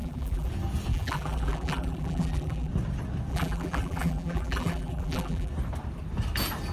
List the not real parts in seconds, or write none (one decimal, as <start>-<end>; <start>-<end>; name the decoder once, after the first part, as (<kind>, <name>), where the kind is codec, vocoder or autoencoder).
0.0-0.5 (vocoder, BigVGAN v2); 0.9-2.7; 3.3-5.5